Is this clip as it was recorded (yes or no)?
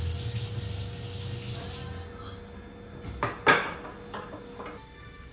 yes